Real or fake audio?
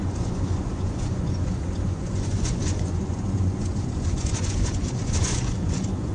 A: fake